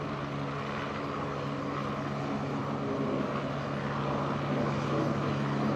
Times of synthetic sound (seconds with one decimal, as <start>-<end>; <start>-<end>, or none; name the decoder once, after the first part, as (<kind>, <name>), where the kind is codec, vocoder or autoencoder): none

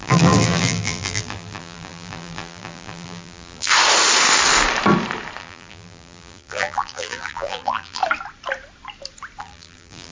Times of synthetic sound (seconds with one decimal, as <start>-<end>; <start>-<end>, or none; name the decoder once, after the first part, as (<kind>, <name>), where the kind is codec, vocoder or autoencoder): 0.0-3.7 (vocoder, BigVGAN v2); 5.4-8.0; 9.4-10.1

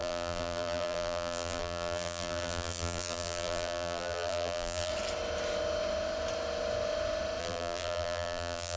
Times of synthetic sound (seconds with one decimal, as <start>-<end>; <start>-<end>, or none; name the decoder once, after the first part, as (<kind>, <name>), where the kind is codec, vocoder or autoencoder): 0.0-4.9 (vocoder, BigVGAN v2); 7.4-8.8

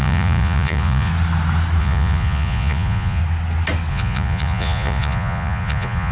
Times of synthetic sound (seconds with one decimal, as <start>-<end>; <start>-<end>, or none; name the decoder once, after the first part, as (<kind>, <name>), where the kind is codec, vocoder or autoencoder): 0.0-1.1 (vocoder, Vocos); 1.8-3.2; 3.9-6.1

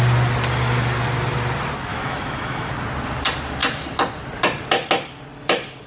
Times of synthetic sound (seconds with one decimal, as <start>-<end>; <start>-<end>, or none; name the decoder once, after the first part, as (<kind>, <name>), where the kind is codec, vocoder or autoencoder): 1.9-2.7 (autoencoder, DAC-VAE)

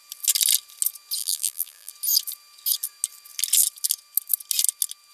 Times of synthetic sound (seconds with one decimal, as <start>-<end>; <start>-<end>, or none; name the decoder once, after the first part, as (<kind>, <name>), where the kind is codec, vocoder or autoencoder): 1.2-1.9 (vocoder, BigVGAN v2)